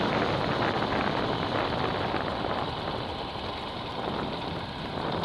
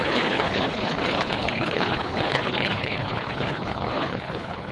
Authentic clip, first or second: first